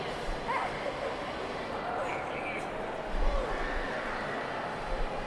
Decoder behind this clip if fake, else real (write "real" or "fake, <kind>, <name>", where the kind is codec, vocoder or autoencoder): real